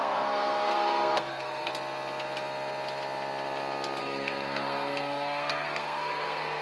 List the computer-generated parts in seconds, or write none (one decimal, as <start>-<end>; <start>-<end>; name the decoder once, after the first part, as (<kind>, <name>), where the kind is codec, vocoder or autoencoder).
0.0-1.7 (codec, SNAC); 4.0-6.6

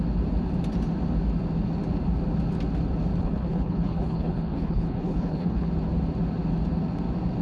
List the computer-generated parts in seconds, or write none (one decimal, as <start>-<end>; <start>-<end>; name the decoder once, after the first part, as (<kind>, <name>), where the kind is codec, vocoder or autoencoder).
3.2-5.7 (codec, HILCodec)

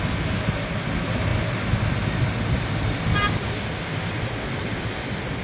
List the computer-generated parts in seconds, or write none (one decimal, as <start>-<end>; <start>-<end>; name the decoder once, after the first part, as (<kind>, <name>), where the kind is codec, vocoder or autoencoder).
none

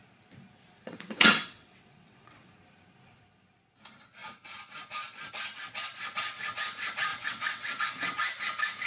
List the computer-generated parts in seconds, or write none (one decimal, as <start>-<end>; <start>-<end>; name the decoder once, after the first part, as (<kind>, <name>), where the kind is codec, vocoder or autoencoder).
0.8-2.5 (vocoder, WaveNeXt); 7.1-7.8